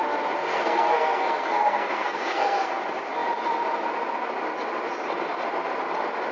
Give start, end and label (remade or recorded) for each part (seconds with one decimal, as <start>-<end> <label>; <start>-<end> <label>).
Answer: 0.0-0.4 recorded; 0.4-2.8 remade; 2.8-6.3 recorded